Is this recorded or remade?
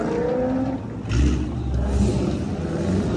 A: recorded